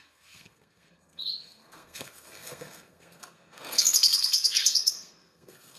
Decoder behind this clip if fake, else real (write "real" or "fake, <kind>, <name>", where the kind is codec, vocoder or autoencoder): fake, codec, SNAC